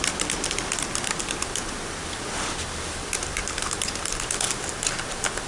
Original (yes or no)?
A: yes